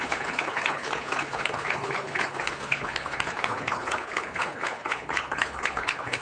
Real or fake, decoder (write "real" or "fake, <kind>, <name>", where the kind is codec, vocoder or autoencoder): fake, codec, HILCodec